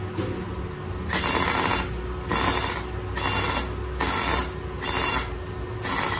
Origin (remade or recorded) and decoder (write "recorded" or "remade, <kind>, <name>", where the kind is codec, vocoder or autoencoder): recorded